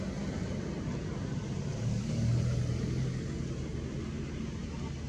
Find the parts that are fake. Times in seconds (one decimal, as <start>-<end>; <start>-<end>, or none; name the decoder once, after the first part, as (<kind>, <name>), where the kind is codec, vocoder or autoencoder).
1.7-2.3 (codec, DAC)